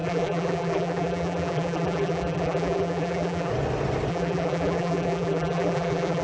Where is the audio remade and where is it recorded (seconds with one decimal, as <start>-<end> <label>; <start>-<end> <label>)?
0.0-3.5 remade; 3.5-4.1 recorded; 4.1-6.2 remade